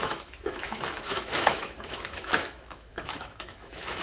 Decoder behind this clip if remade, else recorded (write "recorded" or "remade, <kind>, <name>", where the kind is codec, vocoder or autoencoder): remade, autoencoder, DAC-VAE